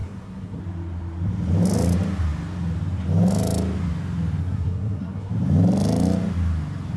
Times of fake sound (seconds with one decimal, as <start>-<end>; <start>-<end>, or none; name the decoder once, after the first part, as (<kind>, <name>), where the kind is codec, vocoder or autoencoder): 0.0-0.6 (codec, SNAC); 4.4-5.3